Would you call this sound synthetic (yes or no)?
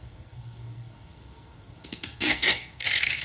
yes